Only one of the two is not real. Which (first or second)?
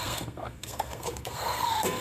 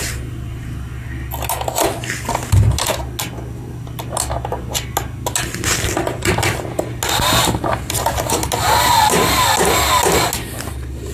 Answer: first